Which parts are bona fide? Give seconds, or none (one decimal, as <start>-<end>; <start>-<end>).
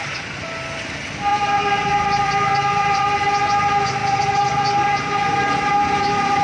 0.0-1.3; 1.8-6.4